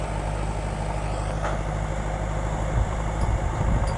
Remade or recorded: recorded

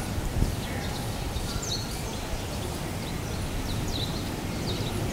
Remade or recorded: recorded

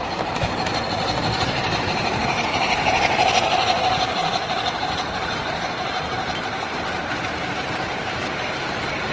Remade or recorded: remade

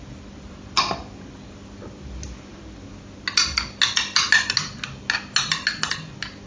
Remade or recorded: recorded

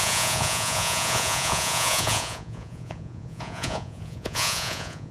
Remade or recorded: remade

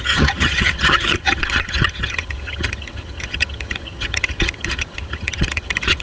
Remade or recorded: remade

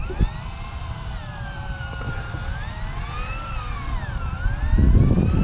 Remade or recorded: recorded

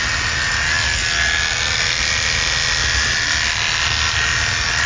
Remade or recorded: recorded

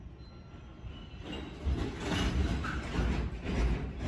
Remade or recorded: recorded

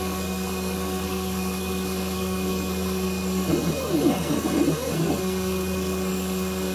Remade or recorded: remade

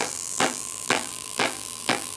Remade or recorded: remade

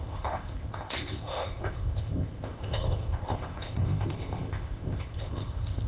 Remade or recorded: remade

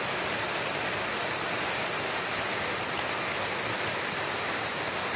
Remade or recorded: recorded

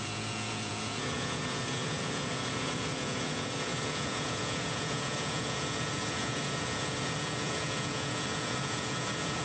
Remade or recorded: remade